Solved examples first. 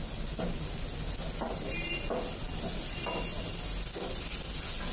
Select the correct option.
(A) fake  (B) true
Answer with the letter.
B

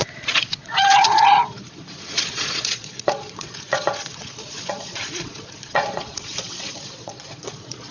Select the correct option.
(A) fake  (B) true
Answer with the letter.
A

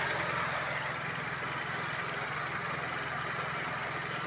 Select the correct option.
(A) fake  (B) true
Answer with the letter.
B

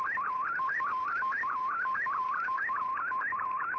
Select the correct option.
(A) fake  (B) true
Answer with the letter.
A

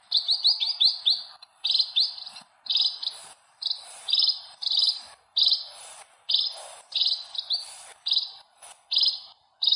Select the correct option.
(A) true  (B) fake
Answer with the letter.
A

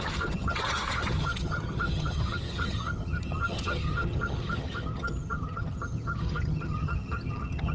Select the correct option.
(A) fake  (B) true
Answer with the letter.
A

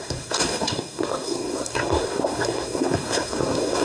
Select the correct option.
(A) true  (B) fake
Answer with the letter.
B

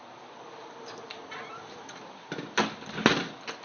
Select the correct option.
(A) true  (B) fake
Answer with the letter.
A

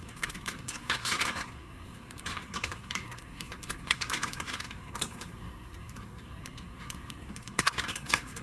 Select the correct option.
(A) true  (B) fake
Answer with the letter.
B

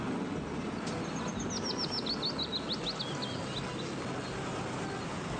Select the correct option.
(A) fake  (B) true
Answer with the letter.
B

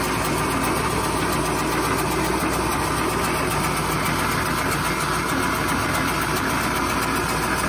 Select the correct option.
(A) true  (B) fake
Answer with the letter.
A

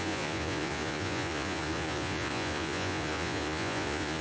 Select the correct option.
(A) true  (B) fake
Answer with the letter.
B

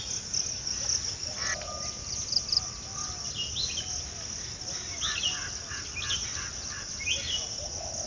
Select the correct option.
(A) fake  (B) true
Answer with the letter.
B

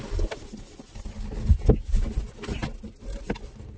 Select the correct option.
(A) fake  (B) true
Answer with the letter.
B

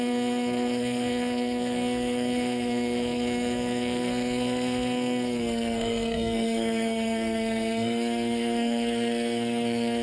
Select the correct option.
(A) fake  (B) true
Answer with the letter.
A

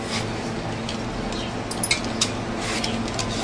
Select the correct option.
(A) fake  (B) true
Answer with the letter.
B